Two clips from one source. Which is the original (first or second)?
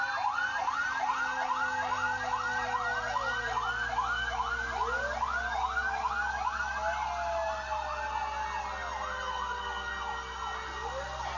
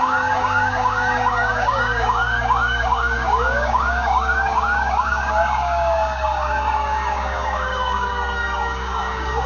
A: first